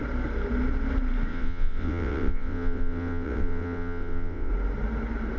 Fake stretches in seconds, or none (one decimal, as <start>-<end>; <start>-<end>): 1.3-4.5